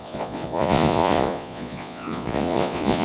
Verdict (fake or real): fake